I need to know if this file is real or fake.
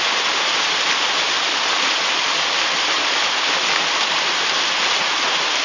real